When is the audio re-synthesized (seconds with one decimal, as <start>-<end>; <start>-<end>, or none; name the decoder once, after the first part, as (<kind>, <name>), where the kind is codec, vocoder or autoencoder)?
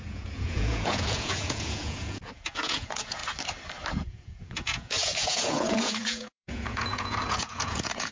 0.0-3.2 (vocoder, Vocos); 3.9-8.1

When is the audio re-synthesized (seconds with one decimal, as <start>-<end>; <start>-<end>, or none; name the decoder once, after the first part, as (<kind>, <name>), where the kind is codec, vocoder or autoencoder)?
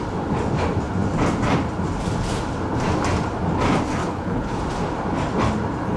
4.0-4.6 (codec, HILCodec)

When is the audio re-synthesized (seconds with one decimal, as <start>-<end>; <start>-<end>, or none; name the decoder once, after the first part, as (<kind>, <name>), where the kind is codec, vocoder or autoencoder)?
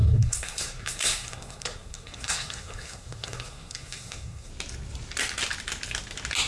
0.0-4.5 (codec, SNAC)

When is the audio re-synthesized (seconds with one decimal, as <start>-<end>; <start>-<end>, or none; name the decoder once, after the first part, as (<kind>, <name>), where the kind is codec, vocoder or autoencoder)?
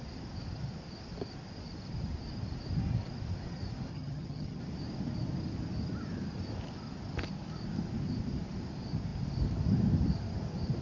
3.9-4.6 (vocoder, HiFi-GAN)